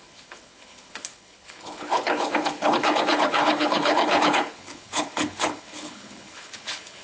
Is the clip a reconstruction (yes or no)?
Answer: yes